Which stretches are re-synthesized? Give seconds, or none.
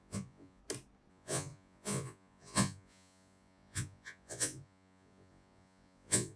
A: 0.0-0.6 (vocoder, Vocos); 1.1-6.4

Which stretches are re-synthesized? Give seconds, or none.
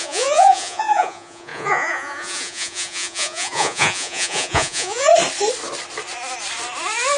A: 0.0-5.1 (vocoder, Vocos)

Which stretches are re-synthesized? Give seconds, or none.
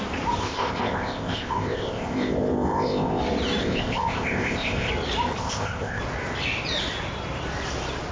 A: 0.4-3.2 (codec, ZipCodec); 3.6-4.9; 5.4-6.0